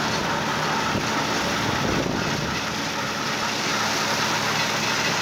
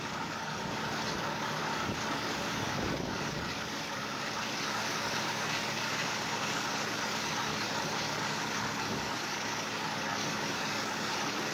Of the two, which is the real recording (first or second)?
first